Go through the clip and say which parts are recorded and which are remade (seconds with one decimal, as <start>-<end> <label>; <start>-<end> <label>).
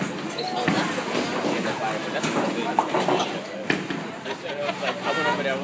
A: 0.0-5.6 recorded